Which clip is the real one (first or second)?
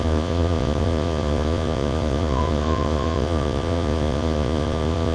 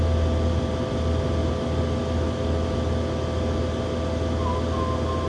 second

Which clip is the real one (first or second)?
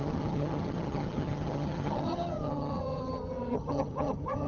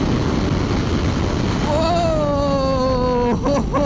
second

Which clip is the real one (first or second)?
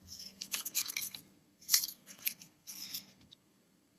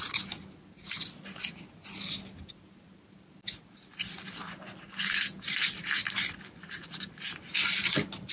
second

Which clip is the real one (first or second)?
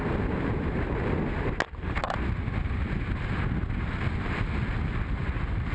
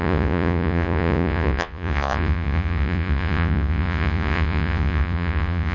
first